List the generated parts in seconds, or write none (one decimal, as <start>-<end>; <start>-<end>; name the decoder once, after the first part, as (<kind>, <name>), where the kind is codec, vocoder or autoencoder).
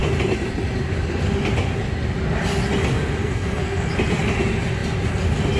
3.2-3.9 (codec, SNAC)